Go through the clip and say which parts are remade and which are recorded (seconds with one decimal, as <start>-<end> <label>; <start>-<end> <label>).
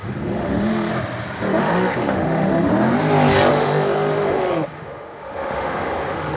0.0-0.9 remade; 0.9-1.6 recorded; 1.6-2.7 remade; 2.7-3.5 recorded; 3.5-6.4 remade